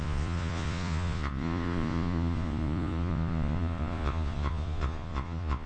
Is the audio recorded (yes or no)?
no